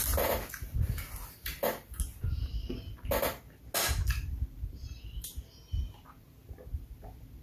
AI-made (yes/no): no